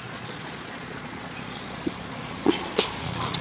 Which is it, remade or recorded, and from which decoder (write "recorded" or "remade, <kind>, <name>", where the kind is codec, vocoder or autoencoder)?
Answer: remade, vocoder, Vocos